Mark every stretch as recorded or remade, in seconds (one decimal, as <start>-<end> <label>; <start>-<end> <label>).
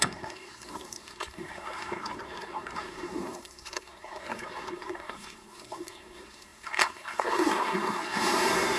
0.0-8.8 remade